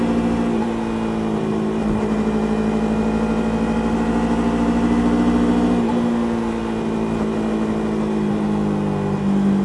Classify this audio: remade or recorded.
recorded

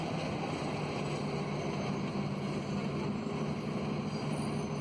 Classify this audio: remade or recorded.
recorded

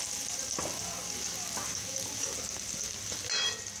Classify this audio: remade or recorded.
recorded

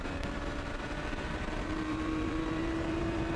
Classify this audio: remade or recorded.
remade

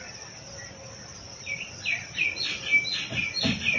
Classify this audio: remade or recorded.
remade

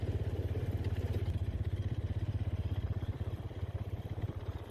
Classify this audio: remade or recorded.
remade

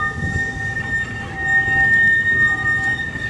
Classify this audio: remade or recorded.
recorded